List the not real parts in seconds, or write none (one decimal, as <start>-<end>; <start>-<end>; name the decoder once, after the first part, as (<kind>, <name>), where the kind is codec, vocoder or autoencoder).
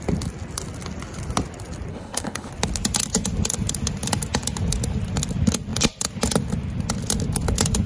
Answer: 1.9-2.5 (codec, HILCodec)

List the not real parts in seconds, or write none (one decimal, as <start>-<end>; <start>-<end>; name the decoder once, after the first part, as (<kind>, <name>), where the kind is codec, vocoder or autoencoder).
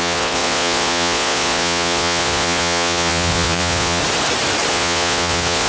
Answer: 0.0-4.0 (vocoder, Vocos); 4.7-5.7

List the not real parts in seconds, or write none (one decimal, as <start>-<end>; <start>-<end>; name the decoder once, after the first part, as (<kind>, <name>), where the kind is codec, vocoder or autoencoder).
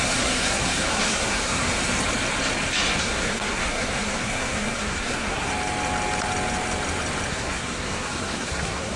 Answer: 0.0-1.7 (codec, SNAC); 3.0-5.5; 7.3-9.0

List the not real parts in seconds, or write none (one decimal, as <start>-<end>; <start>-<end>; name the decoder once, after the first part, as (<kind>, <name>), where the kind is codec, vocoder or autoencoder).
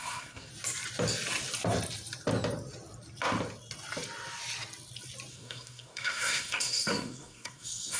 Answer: 0.0-0.5 (codec, SNAC); 5.3-8.0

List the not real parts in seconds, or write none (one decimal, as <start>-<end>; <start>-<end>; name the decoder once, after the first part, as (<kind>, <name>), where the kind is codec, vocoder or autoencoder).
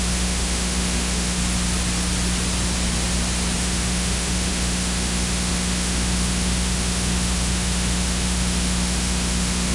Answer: 0.0-1.4 (autoencoder, DAC-VAE); 3.6-9.7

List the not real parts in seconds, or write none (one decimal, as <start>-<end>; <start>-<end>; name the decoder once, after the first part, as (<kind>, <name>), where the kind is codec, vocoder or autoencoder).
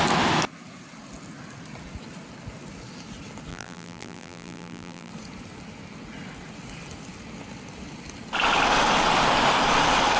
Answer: 3.5-5.1 (vocoder, BigVGAN v2)